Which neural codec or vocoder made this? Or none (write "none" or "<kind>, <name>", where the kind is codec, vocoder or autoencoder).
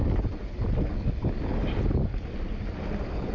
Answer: none